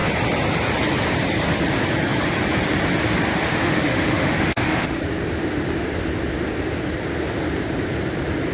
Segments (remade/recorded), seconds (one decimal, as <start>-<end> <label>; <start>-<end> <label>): 0.0-3.3 recorded; 3.3-5.0 remade; 5.0-8.5 recorded